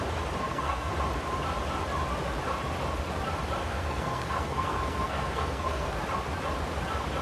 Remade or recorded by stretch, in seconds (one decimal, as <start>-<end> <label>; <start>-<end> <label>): 0.0-0.4 recorded; 0.4-0.9 remade; 0.9-3.6 recorded; 3.6-5.9 remade; 5.9-7.2 recorded